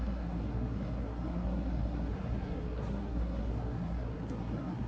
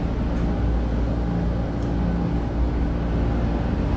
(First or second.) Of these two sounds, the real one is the second